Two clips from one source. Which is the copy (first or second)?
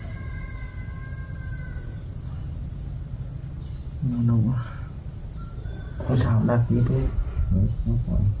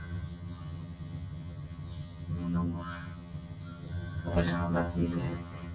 second